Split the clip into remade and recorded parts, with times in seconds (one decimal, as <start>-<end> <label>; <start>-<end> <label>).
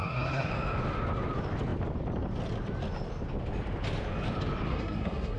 0.0-0.5 remade; 0.5-4.7 recorded; 4.7-5.4 remade